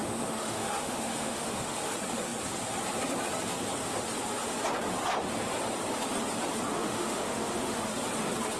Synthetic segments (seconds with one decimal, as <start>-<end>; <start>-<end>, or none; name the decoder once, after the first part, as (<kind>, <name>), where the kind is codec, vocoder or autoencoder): 0.0-1.9 (autoencoder, DAC-VAE); 6.7-7.9